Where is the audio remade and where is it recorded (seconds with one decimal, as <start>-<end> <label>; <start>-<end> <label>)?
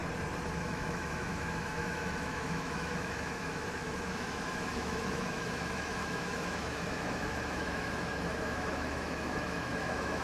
0.0-0.6 recorded; 0.6-10.2 remade